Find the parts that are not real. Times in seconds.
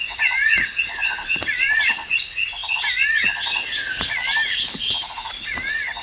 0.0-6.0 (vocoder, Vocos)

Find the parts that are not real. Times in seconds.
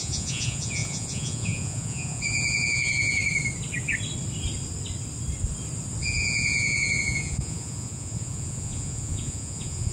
0.0-3.2 (vocoder, Vocos); 6.0-9.9